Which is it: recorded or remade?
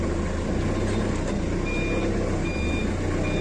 recorded